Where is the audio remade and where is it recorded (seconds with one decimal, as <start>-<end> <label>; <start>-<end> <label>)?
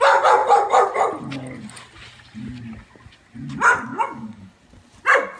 0.0-3.9 recorded; 3.9-4.5 remade; 4.5-5.4 recorded